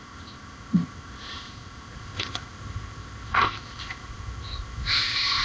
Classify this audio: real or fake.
fake